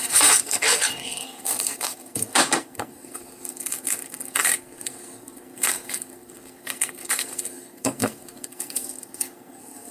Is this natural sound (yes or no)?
no